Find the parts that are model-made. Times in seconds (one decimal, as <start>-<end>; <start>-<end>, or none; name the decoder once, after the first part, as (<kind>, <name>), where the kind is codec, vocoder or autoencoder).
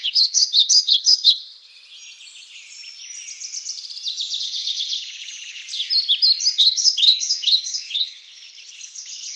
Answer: 0.0-1.7 (codec, HILCodec); 4.4-5.6; 6.6-9.4